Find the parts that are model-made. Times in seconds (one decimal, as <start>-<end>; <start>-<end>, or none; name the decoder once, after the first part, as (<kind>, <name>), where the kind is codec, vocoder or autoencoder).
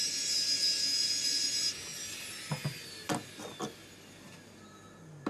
none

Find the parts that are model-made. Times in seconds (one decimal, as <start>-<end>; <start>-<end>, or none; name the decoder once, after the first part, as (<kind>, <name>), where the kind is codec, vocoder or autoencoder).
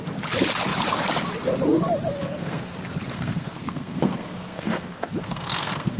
2.2-2.7 (codec, SNAC); 3.1-6.0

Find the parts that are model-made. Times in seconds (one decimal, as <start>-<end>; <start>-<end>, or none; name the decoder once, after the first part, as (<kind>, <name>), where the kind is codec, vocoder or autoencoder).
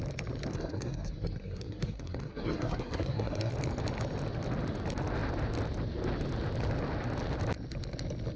0.5-3.5 (codec, SNAC)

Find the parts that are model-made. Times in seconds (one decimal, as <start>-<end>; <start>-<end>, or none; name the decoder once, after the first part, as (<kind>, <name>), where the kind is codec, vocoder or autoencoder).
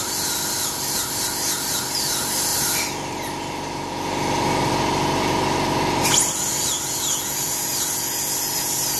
none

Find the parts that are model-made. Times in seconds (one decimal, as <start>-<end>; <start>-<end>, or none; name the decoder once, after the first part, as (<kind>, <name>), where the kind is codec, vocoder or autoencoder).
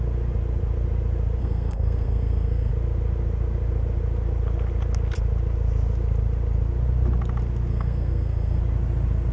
1.4-2.7 (codec, SNAC); 7.7-8.6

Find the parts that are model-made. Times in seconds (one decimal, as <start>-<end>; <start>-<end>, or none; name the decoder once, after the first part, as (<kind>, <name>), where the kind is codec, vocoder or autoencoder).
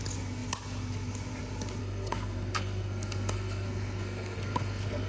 1.8-5.1 (codec, SNAC)